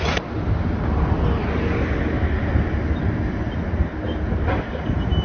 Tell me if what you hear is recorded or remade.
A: recorded